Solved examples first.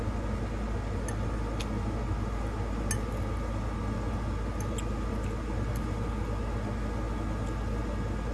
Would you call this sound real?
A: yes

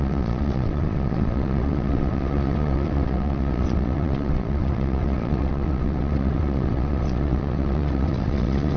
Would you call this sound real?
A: no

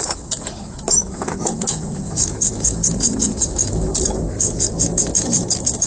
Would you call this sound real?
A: no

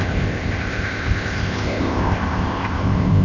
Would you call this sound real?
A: no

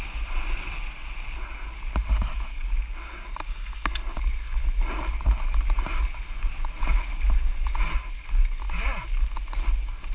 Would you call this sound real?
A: yes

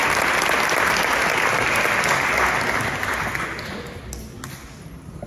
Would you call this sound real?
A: yes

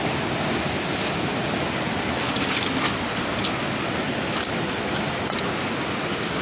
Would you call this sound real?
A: yes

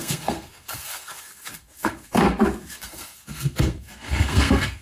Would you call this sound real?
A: no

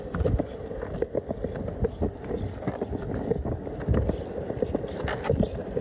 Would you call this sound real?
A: yes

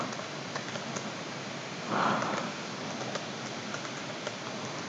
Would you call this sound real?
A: yes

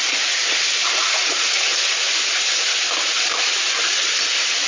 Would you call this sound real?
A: yes